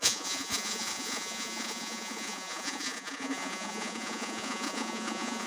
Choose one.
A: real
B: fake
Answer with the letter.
B